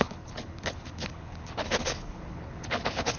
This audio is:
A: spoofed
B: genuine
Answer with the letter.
A